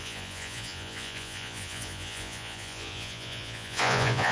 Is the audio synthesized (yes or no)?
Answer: yes